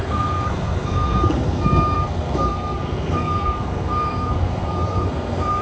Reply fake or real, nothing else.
fake